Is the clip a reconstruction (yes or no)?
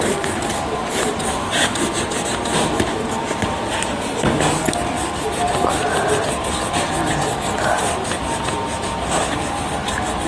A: no